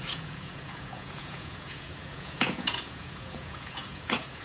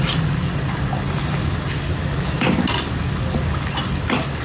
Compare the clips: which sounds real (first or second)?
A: second